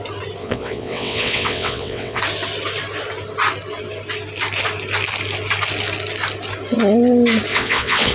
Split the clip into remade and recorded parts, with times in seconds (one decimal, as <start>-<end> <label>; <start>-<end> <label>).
0.0-0.4 recorded; 0.4-2.2 remade; 2.2-7.5 recorded; 7.5-8.1 remade